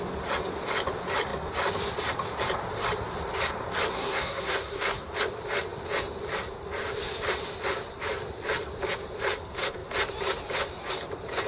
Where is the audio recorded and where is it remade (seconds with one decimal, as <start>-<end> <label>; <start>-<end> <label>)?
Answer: 0.0-3.9 recorded; 3.9-5.1 remade; 5.1-11.5 recorded